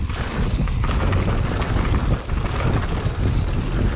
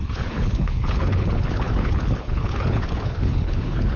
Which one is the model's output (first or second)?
second